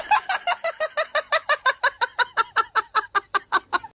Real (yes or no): yes